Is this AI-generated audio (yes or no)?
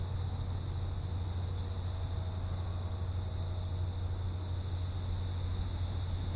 no